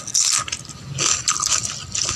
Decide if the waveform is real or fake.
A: real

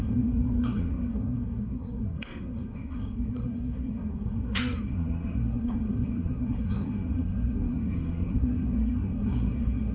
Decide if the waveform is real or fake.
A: fake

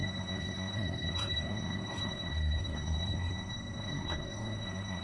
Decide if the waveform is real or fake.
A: fake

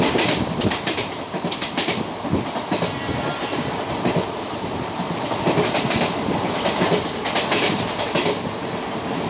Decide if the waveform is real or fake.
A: real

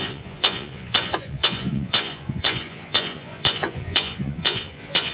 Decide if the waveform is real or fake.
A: fake